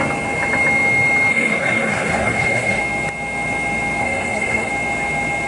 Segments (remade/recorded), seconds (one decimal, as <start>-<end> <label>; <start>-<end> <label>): 0.0-1.3 recorded; 1.3-2.8 remade; 2.8-4.0 recorded; 4.0-4.7 remade; 4.7-5.5 recorded